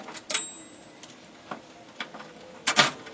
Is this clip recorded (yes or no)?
yes